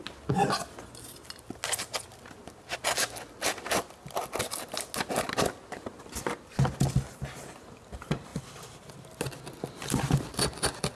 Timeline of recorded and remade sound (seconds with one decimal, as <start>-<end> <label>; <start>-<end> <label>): 0.0-11.0 recorded